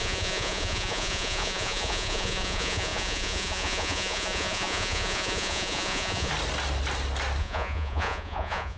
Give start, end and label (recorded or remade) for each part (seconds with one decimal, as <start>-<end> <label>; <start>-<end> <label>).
0.0-6.3 remade; 6.3-7.4 recorded; 7.4-8.8 remade

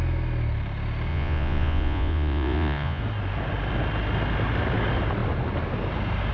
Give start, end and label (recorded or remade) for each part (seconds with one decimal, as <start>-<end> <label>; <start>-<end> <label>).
0.0-1.1 recorded; 1.1-3.0 remade; 3.0-6.3 recorded

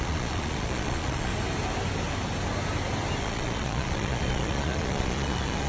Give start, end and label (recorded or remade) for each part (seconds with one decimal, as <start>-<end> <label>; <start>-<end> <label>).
0.0-1.3 remade; 1.3-3.2 recorded; 3.2-5.7 remade

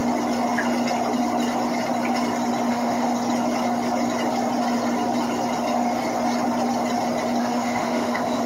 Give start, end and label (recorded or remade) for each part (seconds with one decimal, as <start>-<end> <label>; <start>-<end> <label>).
0.0-2.7 recorded; 2.7-3.1 remade; 3.1-7.4 recorded; 7.4-8.5 remade

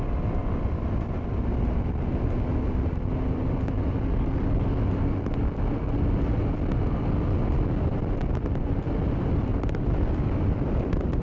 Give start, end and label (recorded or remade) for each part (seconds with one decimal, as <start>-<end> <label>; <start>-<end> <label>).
0.0-0.4 recorded; 0.4-1.4 remade; 1.4-9.5 recorded; 9.5-11.2 remade

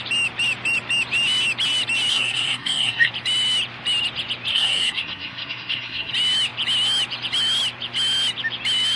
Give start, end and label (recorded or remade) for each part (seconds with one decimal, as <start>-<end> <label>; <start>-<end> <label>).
0.0-2.1 recorded; 2.1-3.1 remade; 3.1-4.5 recorded; 4.5-6.1 remade; 6.1-9.0 recorded